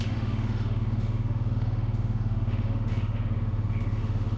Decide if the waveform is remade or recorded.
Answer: remade